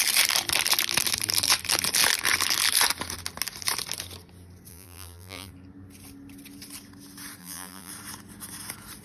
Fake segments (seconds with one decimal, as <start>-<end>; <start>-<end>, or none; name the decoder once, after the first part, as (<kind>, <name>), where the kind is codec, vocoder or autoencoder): 4.7-5.5 (vocoder, BigVGAN v2); 7.4-7.9